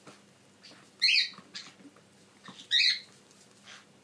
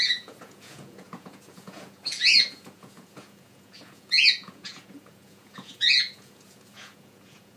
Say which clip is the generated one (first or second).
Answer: second